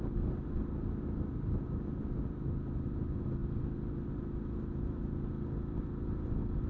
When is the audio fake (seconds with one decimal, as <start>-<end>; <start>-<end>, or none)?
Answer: none